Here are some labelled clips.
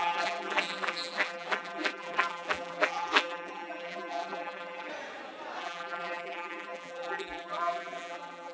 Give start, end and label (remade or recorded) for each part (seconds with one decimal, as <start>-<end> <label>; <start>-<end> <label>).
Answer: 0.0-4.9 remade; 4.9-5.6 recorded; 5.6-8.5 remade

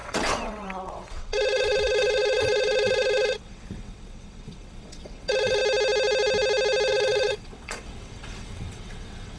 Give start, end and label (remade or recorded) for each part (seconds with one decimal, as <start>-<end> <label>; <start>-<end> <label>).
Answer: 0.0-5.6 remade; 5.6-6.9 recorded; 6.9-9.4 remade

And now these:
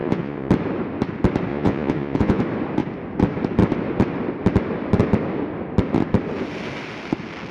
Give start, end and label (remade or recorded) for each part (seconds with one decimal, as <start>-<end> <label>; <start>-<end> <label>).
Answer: 0.0-0.5 remade; 0.5-1.5 recorded; 1.5-2.4 remade; 2.4-7.5 recorded

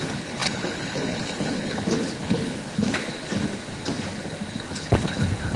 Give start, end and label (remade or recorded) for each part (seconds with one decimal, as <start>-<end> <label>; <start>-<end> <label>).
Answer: 0.0-3.2 remade; 3.2-4.5 recorded; 4.5-5.6 remade

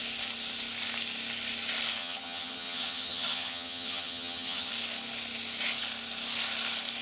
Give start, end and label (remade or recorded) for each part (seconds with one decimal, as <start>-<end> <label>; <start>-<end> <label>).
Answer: 0.0-2.0 recorded; 2.0-4.7 remade; 4.7-7.0 recorded

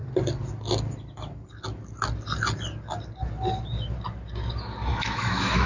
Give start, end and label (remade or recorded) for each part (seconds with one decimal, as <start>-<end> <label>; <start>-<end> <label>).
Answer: 0.0-4.9 recorded; 4.9-5.7 remade